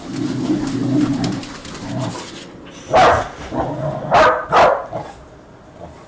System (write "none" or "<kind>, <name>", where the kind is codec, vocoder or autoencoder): none